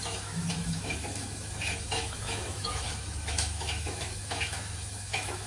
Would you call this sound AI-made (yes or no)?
yes